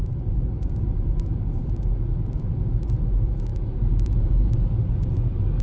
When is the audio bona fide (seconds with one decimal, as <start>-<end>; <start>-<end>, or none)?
0.0-3.5; 4.5-5.6